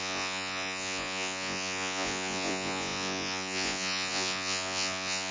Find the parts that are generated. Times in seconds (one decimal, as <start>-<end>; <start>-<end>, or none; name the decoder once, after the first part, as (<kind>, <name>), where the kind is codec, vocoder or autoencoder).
0.0-5.3 (vocoder, Vocos)